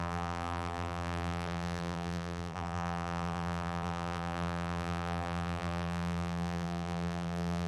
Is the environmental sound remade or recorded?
remade